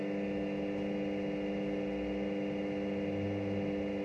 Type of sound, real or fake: real